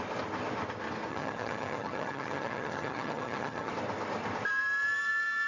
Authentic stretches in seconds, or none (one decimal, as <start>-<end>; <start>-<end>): 0.0-1.1; 3.7-5.5